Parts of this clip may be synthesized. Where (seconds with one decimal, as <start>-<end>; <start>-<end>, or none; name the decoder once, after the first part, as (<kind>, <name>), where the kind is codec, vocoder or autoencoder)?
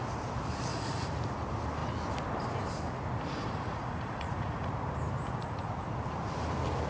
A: 0.7-1.2 (vocoder, Vocos); 3.3-4.7